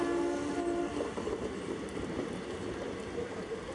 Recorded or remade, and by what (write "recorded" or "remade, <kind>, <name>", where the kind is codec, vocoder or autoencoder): recorded